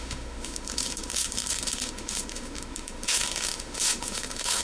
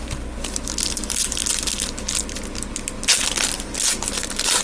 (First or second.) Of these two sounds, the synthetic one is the first